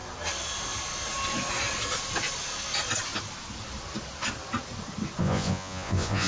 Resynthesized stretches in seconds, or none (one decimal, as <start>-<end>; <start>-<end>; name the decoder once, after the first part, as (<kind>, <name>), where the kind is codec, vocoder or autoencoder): 5.2-6.3 (vocoder, Vocos)